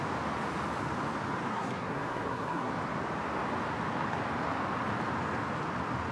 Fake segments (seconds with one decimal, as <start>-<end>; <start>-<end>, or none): 1.5-2.7